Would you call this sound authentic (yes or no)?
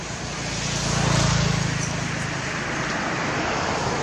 yes